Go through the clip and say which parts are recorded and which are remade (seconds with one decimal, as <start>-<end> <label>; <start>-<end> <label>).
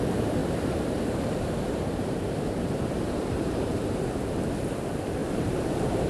0.0-0.4 recorded; 0.4-4.1 remade; 4.1-5.2 recorded; 5.2-6.1 remade